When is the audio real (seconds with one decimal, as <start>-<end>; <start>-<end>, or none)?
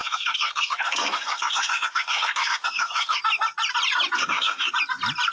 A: 3.2-4.2; 4.7-5.3